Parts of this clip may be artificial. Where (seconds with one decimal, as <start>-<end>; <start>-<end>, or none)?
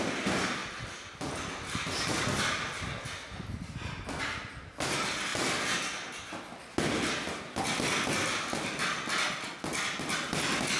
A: none